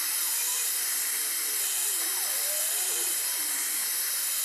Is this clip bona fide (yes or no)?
yes